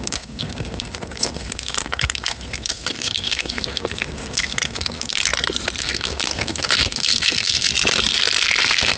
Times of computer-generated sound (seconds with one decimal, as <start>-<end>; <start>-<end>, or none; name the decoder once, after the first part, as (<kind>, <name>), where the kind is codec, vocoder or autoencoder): 0.0-5.2 (codec, SNAC); 5.8-7.7; 8.6-9.0